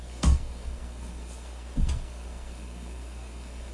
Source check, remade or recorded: remade